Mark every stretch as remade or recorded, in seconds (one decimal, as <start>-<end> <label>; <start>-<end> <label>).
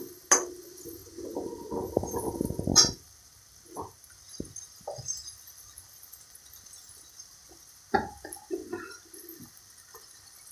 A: 0.0-10.5 recorded